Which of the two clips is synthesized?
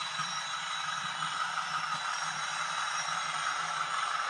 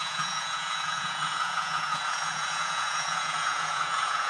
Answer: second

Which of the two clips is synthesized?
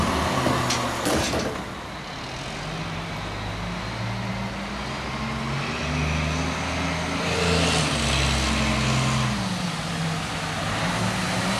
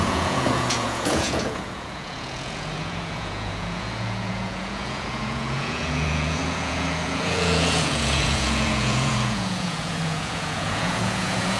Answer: second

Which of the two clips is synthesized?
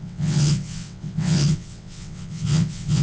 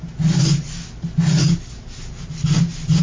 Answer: first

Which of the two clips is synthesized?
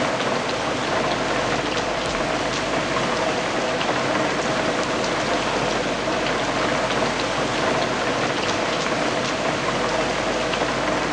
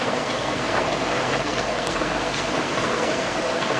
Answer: second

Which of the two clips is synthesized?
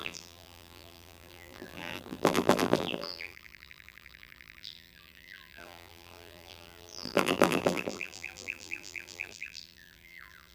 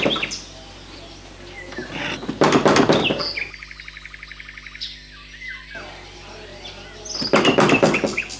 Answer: first